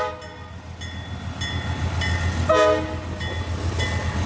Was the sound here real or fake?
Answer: real